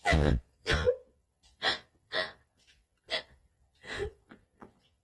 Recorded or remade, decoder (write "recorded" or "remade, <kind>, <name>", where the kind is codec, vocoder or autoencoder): remade, vocoder, Vocos